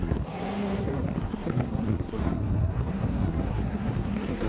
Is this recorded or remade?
remade